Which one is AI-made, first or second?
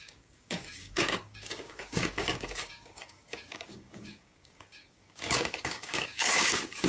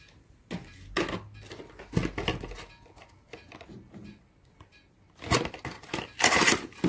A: first